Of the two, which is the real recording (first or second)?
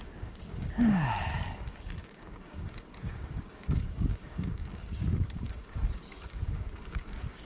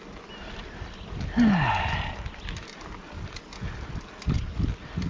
second